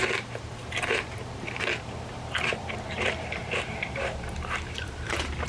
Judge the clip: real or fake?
fake